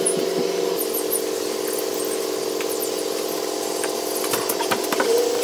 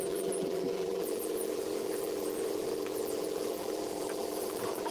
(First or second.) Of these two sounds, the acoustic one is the first